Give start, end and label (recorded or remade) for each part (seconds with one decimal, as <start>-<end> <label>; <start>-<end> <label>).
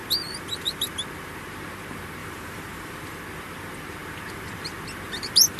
0.0-2.2 recorded; 2.2-3.2 remade; 3.2-5.6 recorded